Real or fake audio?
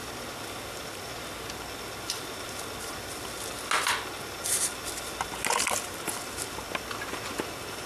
real